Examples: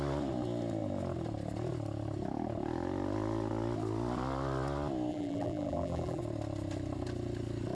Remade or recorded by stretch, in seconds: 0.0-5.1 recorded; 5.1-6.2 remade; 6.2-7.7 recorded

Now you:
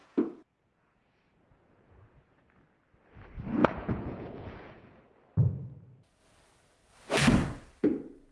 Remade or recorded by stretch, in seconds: 0.0-2.6 remade; 2.6-3.6 recorded; 3.6-5.0 remade; 5.0-5.5 recorded; 5.5-6.2 remade; 6.2-8.3 recorded

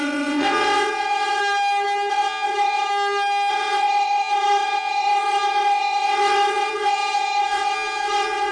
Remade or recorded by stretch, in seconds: 0.0-1.4 remade; 1.4-2.1 recorded; 2.1-2.9 remade; 2.9-3.5 recorded; 3.5-8.5 remade

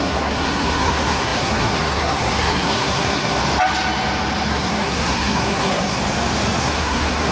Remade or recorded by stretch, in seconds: 0.0-3.4 remade; 3.4-4.5 recorded; 4.5-6.0 remade; 6.0-6.6 recorded; 6.6-7.3 remade

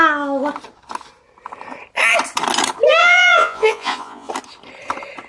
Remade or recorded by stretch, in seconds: 0.0-3.0 recorded; 3.0-4.3 remade; 4.3-5.3 recorded